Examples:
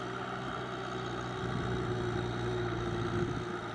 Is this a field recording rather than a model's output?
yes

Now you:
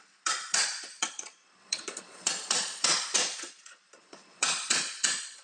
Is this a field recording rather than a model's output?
no